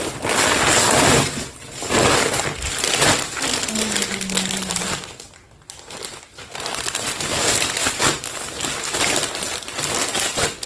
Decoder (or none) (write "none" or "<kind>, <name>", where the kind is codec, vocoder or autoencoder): none